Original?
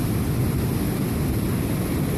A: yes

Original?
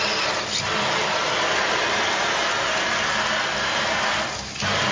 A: yes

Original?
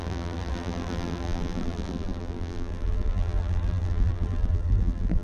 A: no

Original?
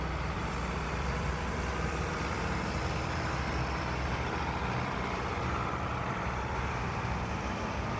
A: no